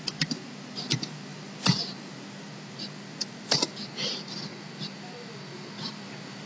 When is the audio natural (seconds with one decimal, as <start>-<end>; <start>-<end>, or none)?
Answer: 0.0-1.3; 2.1-6.5